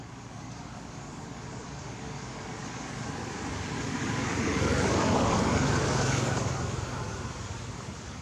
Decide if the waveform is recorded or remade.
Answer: remade